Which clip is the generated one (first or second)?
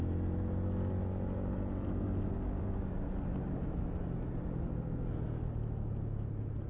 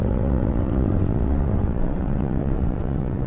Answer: second